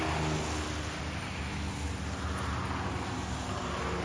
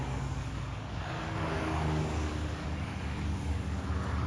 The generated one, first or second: second